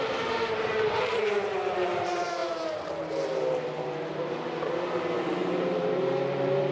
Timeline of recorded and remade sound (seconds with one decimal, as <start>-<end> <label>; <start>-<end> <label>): 0.0-6.7 remade